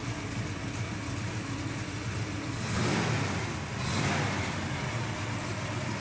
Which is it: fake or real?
real